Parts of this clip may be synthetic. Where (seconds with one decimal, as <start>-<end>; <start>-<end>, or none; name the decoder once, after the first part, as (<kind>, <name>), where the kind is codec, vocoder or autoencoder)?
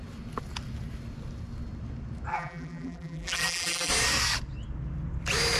2.3-3.9 (vocoder, BigVGAN v2)